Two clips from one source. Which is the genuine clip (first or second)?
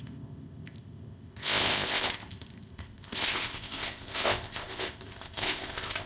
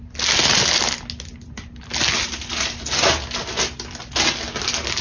second